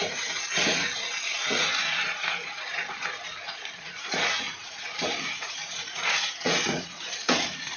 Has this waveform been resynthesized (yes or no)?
yes